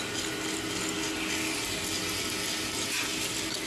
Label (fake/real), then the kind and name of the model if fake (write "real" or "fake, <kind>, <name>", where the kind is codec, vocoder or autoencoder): real